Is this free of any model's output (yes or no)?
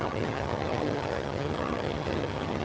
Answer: no